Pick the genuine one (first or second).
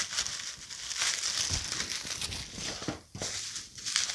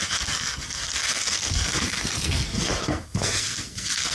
first